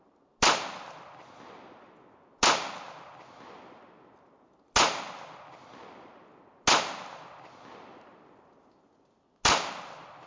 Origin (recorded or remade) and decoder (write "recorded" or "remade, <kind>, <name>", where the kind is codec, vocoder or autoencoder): recorded